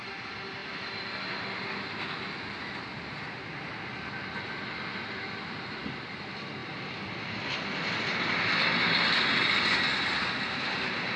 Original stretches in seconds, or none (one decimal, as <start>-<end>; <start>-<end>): 0.0-11.2